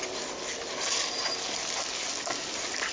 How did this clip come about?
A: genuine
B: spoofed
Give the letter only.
A